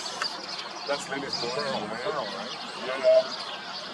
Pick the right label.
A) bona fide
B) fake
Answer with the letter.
A